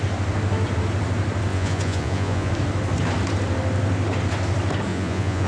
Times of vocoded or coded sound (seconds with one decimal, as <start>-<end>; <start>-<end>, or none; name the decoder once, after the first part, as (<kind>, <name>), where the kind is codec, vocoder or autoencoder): 1.5-2.5 (vocoder, Vocos); 4.9-5.5